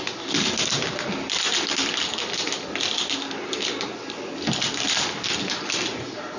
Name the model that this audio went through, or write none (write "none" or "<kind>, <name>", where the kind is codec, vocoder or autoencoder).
none